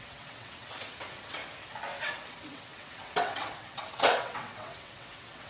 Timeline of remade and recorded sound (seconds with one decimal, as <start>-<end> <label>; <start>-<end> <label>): 0.0-1.4 remade; 1.4-2.0 recorded; 2.0-5.5 remade